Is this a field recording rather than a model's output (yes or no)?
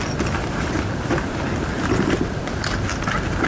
yes